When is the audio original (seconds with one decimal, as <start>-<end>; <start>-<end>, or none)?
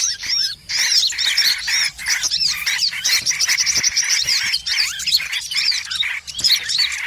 none